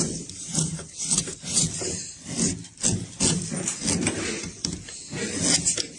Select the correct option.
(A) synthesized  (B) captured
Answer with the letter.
B